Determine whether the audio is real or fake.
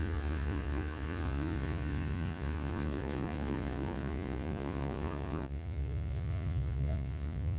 fake